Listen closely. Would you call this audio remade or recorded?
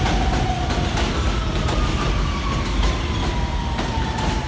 recorded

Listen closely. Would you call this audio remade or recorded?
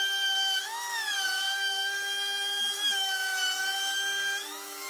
remade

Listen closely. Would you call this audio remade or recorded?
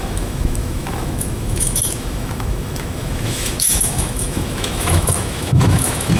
remade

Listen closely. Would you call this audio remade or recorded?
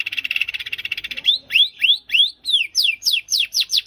remade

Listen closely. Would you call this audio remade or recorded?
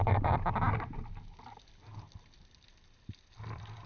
recorded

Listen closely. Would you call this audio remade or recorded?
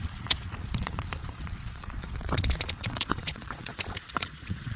remade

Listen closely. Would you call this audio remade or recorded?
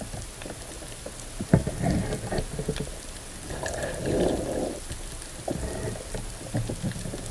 recorded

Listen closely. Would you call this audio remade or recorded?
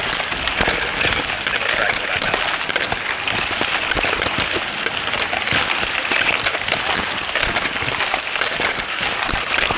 recorded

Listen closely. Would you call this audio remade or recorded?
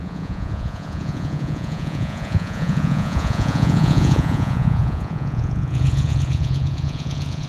remade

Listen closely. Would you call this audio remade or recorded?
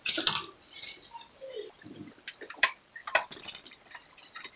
remade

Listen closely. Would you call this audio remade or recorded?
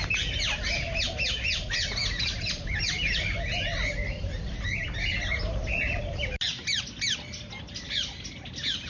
recorded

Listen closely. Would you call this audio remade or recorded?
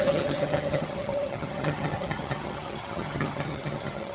remade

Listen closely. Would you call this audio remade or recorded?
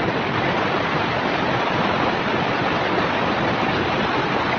recorded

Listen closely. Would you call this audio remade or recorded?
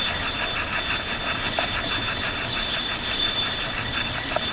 recorded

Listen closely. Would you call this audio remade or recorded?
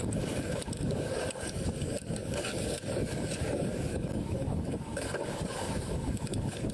remade